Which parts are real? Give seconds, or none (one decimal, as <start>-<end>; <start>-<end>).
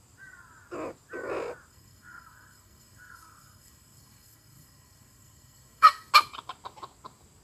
0.0-1.7; 6.1-7.4